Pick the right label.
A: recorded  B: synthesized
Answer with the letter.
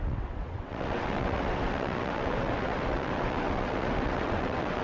B